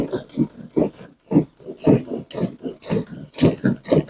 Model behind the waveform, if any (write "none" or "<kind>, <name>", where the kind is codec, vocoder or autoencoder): none